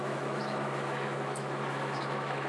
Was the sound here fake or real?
fake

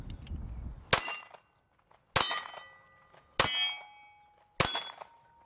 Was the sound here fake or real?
real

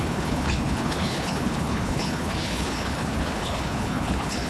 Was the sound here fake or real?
fake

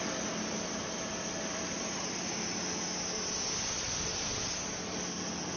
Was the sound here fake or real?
real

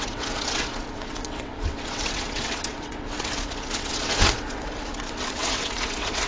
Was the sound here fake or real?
fake